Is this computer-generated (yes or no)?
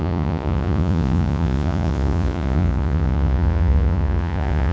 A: yes